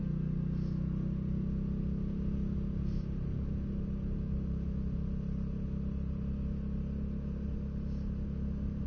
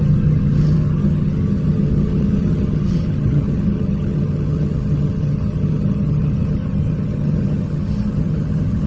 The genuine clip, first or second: first